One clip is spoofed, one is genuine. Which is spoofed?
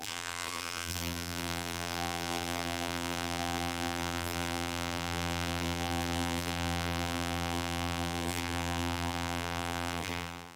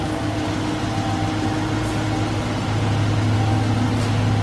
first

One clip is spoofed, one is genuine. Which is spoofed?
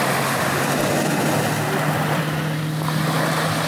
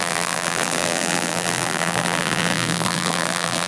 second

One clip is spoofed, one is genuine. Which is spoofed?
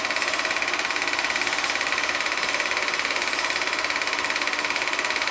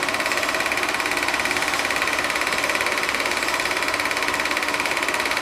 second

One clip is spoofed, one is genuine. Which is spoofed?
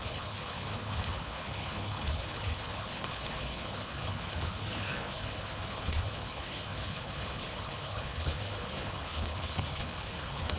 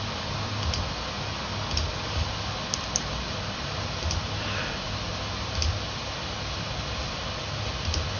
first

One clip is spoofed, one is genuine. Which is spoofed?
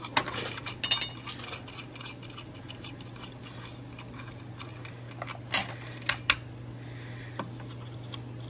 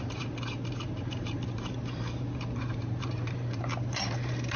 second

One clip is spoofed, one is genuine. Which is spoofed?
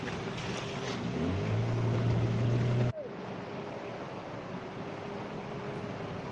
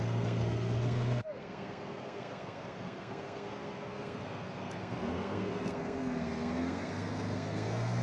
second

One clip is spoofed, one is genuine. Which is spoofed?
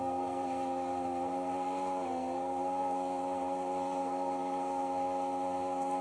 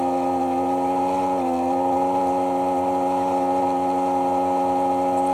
first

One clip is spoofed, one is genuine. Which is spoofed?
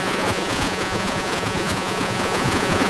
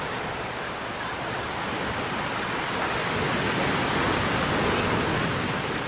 first